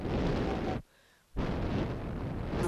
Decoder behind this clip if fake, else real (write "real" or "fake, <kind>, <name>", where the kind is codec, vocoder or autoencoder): real